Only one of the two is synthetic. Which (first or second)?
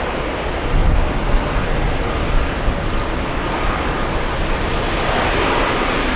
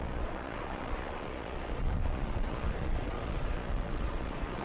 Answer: second